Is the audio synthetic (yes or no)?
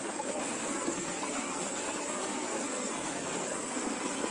yes